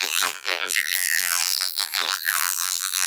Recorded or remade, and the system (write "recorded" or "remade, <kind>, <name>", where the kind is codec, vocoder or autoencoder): remade, vocoder, BigVGAN v2